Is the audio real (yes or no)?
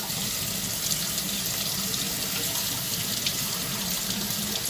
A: yes